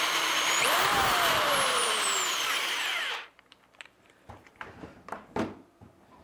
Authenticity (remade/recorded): remade